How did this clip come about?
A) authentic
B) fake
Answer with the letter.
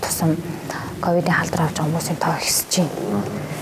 A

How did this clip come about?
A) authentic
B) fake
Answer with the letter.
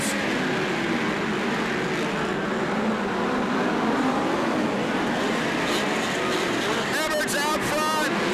A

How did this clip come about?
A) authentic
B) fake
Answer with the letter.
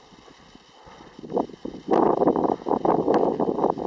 A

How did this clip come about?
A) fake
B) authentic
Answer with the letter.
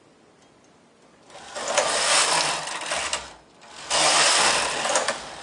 B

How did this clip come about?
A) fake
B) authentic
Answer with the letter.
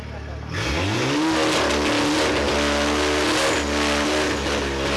B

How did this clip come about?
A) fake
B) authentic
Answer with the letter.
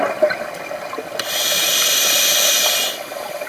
B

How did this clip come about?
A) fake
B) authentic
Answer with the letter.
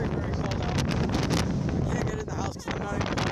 B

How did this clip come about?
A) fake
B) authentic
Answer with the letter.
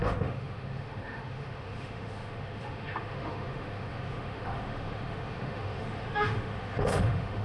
A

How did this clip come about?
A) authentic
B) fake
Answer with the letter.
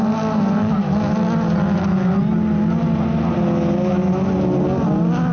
A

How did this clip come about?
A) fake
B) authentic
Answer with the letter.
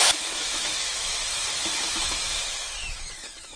A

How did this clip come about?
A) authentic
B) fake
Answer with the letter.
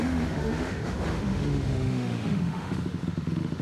B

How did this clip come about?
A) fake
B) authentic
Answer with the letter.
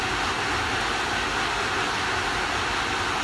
B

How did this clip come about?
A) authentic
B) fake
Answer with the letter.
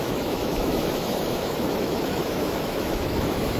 B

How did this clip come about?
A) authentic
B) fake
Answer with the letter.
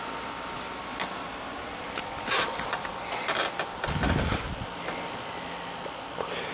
A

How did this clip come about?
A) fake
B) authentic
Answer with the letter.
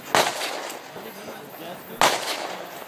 B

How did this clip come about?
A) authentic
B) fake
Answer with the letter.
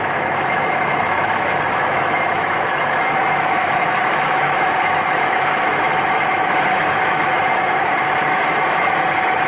B